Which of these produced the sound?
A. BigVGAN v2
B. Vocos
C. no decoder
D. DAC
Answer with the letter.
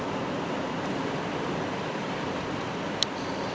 A